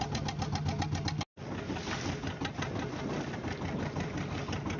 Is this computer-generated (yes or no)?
no